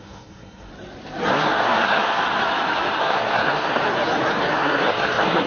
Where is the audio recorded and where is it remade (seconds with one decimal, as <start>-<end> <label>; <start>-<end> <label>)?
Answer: 0.0-0.7 remade; 0.7-1.3 recorded; 1.3-2.2 remade; 2.2-3.0 recorded; 3.0-3.8 remade; 3.8-4.5 recorded; 4.5-5.5 remade